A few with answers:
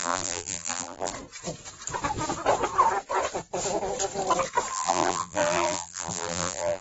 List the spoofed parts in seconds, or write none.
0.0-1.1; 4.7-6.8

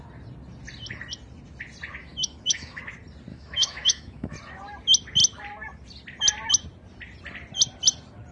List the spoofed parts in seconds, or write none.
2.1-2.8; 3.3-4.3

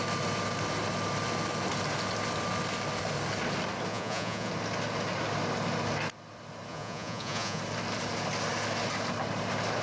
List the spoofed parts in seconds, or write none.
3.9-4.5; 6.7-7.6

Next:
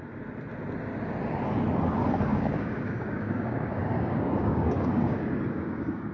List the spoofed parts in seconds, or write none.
2.3-6.1

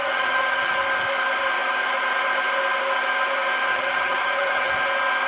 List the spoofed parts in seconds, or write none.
0.0-0.7; 3.7-4.7

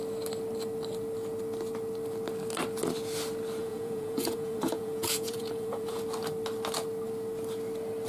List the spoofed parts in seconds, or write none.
3.6-6.0

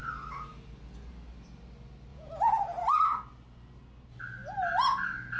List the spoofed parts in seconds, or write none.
2.1-2.6